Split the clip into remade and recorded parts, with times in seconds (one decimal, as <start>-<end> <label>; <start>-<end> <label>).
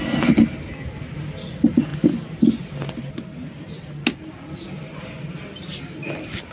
0.0-6.5 recorded